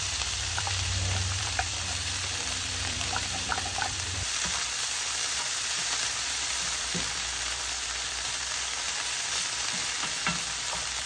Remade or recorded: remade